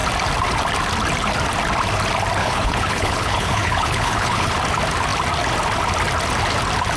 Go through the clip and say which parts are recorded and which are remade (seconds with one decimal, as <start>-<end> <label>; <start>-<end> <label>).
0.0-2.4 recorded; 2.4-4.5 remade; 4.5-7.0 recorded